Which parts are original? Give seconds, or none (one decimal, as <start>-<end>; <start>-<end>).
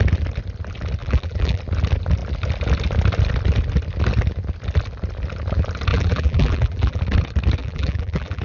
0.0-1.0; 1.6-5.9; 7.0-7.6